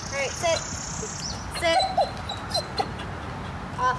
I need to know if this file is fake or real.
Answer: real